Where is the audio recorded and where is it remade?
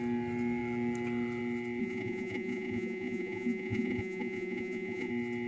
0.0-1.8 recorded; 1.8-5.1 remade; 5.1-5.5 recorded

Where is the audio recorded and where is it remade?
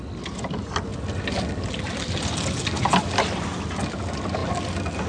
0.0-5.1 recorded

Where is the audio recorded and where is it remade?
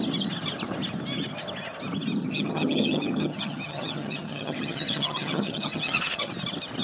0.0-2.2 recorded; 2.2-6.3 remade; 6.3-6.8 recorded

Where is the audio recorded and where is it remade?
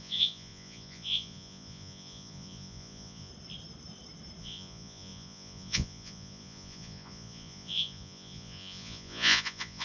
0.0-3.3 remade; 3.3-4.4 recorded; 4.4-9.8 remade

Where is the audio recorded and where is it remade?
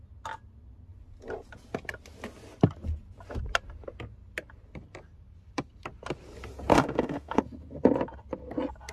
0.0-6.7 recorded; 6.7-7.4 remade; 7.4-8.9 recorded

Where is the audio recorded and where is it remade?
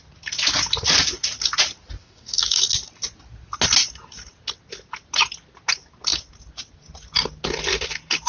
0.0-2.0 recorded; 2.0-2.6 remade; 2.6-8.3 recorded